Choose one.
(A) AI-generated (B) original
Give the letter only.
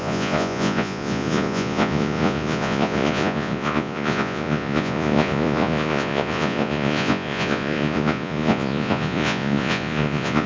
A